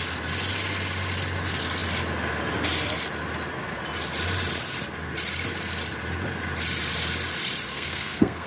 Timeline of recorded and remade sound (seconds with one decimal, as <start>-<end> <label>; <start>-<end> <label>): 0.0-7.7 recorded; 7.7-8.5 remade